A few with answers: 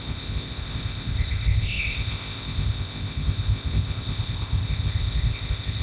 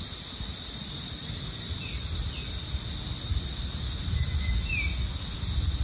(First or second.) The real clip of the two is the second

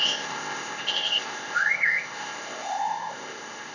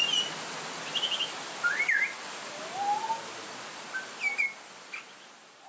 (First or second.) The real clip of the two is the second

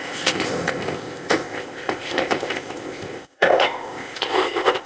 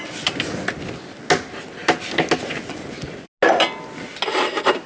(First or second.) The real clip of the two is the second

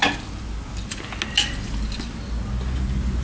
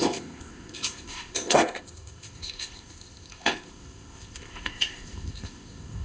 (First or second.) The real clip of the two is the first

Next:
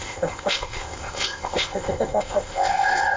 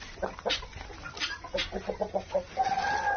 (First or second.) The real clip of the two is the second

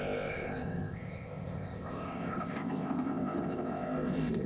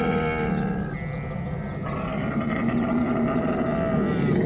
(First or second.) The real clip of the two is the second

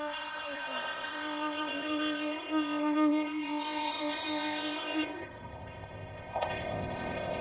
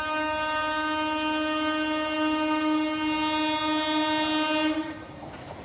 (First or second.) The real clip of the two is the second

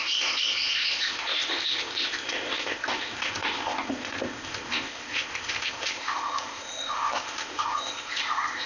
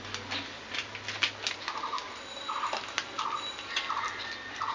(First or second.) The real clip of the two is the second